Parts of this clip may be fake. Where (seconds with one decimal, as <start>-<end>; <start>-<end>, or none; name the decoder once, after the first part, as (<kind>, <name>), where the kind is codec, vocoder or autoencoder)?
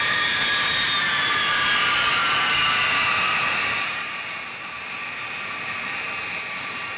0.0-2.2 (vocoder, BigVGAN v2); 3.1-7.0